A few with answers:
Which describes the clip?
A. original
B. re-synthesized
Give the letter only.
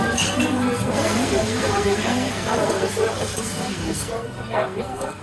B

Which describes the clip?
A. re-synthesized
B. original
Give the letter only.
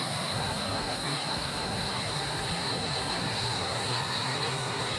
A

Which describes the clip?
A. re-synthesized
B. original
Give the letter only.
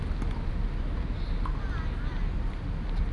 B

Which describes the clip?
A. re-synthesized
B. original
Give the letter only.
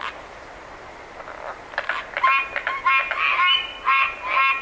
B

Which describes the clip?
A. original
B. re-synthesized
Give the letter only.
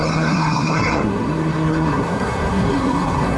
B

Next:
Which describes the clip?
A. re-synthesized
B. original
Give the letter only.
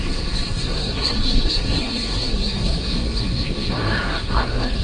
A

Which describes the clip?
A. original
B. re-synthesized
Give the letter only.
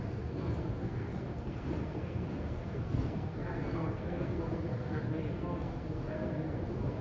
B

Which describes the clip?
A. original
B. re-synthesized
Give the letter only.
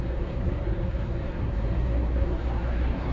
B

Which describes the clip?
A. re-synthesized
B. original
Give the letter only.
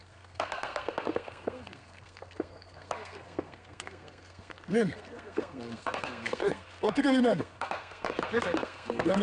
A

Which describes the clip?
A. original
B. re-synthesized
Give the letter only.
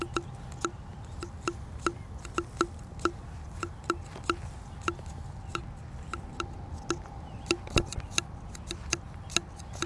A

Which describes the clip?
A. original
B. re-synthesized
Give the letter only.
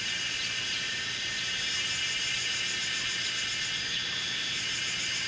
A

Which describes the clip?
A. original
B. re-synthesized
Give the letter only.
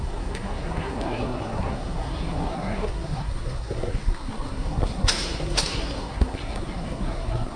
B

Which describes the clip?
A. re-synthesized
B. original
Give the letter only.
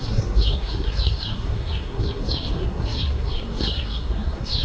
A